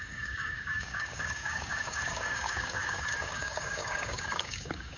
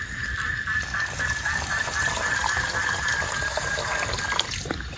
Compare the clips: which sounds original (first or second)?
second